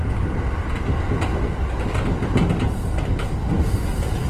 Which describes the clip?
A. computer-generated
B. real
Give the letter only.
B